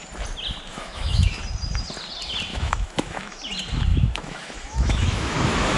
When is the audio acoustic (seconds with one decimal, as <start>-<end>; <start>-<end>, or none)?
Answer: 0.0-0.7; 1.4-2.5; 3.4-3.9